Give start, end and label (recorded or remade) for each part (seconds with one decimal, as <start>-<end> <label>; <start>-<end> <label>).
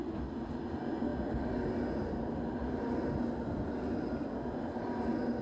0.0-5.4 recorded